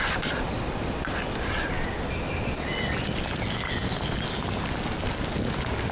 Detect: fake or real real